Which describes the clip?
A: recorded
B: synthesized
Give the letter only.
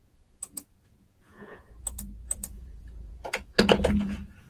B